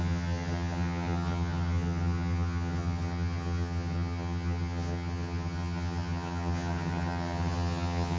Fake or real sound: fake